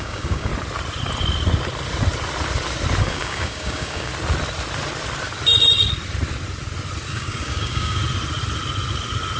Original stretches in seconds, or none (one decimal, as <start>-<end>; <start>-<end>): 0.5-3.0; 4.1-7.1; 8.0-9.4